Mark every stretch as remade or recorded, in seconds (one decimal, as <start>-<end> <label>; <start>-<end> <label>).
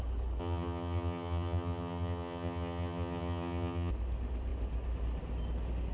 0.0-0.4 recorded; 0.4-3.9 remade; 3.9-5.9 recorded